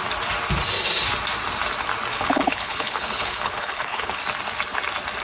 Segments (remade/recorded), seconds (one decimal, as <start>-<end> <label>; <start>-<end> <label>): 0.0-2.1 recorded; 2.1-4.2 remade; 4.2-5.2 recorded